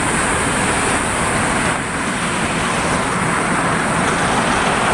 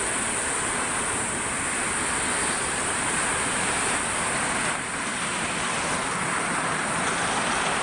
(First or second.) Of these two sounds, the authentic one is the first